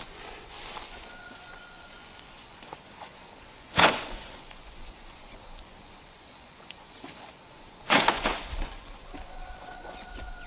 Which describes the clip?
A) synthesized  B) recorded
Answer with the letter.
A